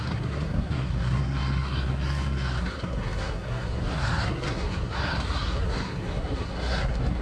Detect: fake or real fake